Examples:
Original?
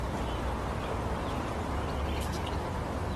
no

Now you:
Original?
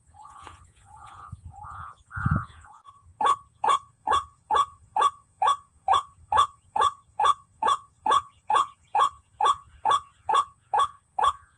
no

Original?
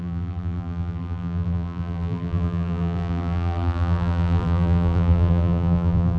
no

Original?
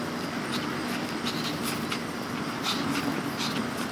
yes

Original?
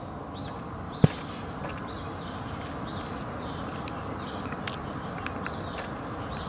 yes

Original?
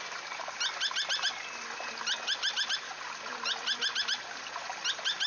yes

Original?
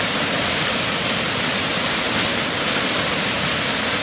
yes